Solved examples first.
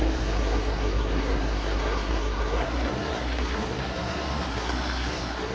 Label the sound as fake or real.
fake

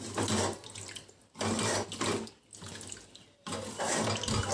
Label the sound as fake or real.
real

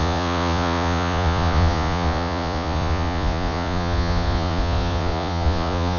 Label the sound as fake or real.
fake